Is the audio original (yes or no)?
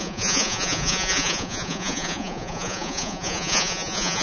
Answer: no